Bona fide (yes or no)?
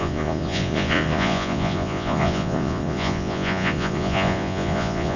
no